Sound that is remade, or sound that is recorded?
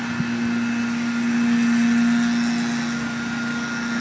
recorded